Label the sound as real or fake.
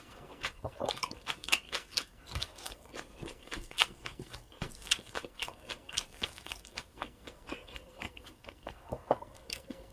fake